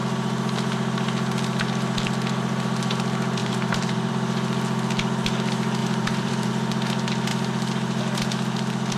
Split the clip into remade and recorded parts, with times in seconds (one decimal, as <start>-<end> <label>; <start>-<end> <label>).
0.0-3.4 recorded; 3.4-4.1 remade; 4.1-5.8 recorded; 5.8-6.5 remade; 6.5-9.0 recorded